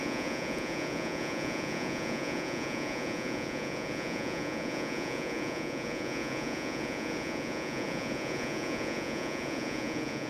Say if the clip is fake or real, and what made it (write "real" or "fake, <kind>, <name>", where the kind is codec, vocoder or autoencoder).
fake, vocoder, Vocos